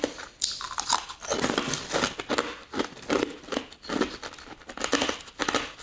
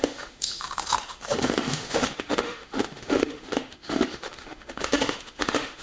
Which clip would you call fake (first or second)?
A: second